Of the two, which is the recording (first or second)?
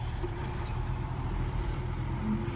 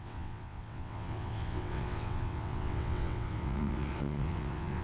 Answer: first